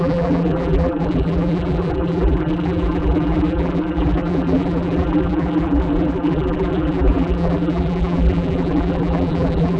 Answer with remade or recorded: remade